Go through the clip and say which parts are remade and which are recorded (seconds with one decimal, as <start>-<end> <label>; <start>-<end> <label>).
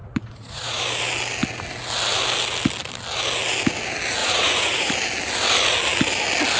0.0-0.8 remade; 0.8-4.2 recorded; 4.2-4.9 remade; 4.9-6.6 recorded